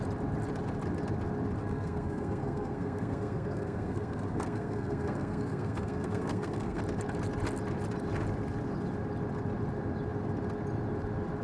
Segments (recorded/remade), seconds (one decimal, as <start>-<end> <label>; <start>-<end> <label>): 0.0-1.6 recorded; 1.6-6.8 remade; 6.8-11.4 recorded